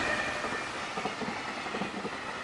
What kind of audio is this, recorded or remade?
recorded